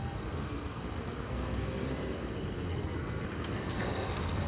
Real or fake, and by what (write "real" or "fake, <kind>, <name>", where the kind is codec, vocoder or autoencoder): fake, codec, SNAC